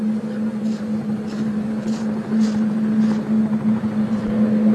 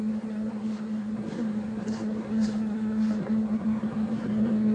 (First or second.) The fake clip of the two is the second